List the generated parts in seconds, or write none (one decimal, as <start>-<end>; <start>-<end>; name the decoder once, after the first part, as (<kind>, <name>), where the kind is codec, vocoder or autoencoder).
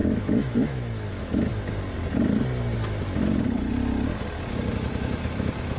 0.0-1.5 (autoencoder, DAC-VAE); 4.7-5.8